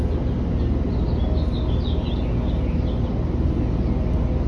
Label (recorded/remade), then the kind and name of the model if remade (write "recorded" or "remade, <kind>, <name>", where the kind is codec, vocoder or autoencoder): recorded